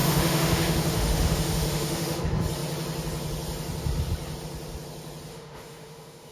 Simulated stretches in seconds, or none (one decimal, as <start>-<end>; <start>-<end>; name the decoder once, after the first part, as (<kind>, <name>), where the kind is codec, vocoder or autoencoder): 0.0-2.2 (autoencoder, DAC-VAE); 5.3-6.3